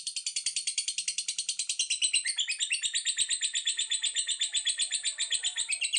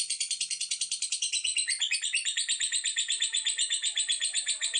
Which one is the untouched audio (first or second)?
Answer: first